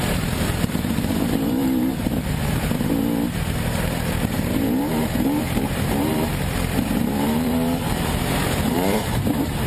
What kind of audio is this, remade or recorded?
remade